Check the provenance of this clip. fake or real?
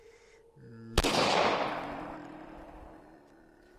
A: real